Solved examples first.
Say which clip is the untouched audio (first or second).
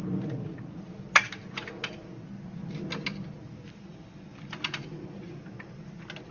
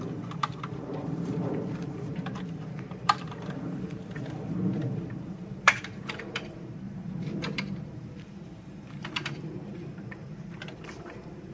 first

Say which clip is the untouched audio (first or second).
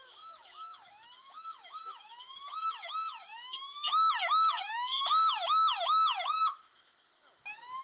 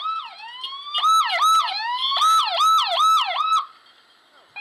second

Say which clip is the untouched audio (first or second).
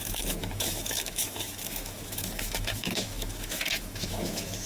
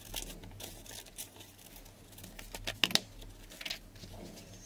second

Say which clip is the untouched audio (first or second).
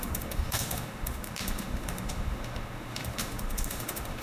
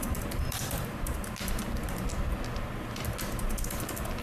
second